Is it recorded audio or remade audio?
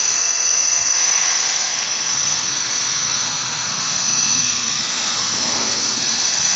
remade